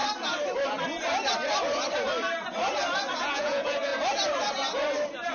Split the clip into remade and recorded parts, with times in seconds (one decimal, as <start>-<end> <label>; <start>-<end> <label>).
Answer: 0.0-3.2 recorded; 3.2-3.9 remade; 3.9-5.3 recorded

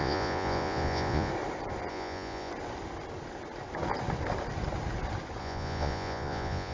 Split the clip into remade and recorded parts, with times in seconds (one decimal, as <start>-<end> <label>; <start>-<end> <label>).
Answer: 0.0-1.3 remade; 1.3-1.9 recorded; 1.9-2.5 remade; 2.5-5.4 recorded; 5.4-6.7 remade

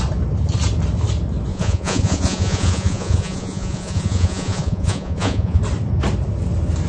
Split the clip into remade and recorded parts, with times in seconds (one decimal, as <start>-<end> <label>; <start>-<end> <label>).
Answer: 0.0-1.5 recorded; 1.5-5.6 remade; 5.6-6.9 recorded